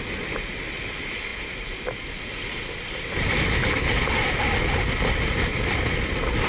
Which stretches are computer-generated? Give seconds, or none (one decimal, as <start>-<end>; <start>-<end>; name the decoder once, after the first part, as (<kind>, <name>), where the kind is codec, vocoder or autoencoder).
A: none